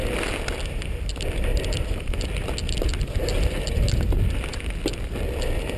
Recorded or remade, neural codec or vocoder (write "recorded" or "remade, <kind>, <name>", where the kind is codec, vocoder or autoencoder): recorded